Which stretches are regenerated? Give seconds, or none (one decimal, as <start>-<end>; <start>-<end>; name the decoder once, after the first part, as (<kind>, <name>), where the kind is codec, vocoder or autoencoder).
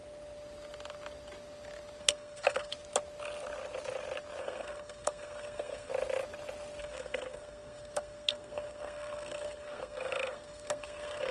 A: 2.0-2.7 (codec, SNAC); 4.4-5.9; 6.8-11.3